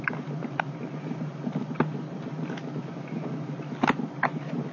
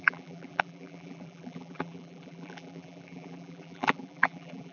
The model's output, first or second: second